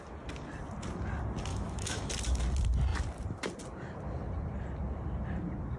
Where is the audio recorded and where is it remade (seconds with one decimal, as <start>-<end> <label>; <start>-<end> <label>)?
0.0-1.5 recorded; 1.5-2.1 remade; 2.1-5.8 recorded